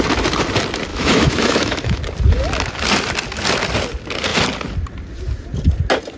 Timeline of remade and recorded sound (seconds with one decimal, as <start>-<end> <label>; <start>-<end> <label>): 0.0-0.9 recorded; 0.9-2.0 remade; 2.0-6.2 recorded